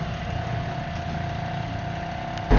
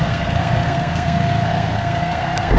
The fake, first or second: second